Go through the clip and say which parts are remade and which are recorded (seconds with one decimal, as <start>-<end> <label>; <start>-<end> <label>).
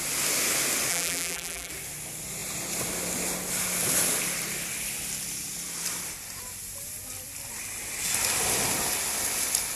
0.0-0.9 recorded; 0.9-1.7 remade; 1.7-9.7 recorded